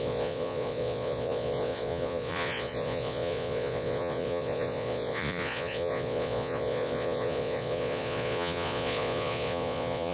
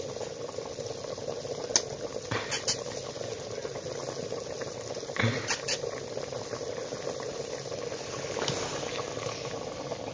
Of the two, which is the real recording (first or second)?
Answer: second